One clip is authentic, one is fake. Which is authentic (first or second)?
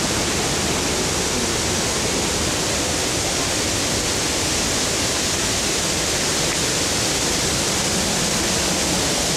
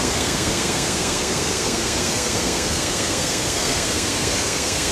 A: first